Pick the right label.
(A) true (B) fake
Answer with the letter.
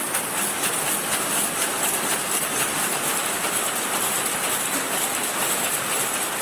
A